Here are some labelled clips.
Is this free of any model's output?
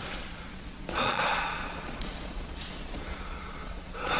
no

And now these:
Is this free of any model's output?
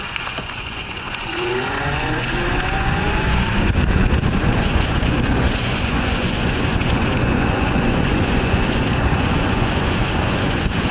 no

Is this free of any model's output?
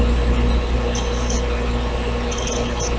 yes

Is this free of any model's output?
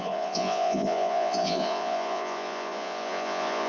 no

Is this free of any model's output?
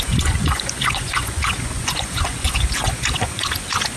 no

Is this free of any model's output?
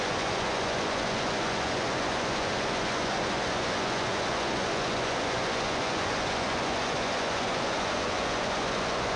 no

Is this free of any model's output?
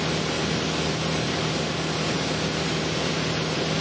yes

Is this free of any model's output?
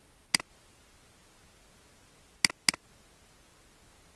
yes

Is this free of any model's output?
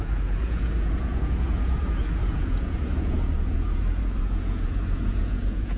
no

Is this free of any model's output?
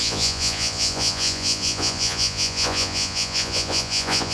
no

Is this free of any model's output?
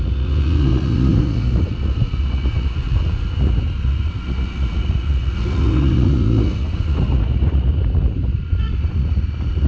no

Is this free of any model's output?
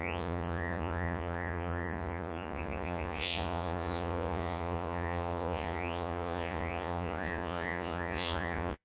no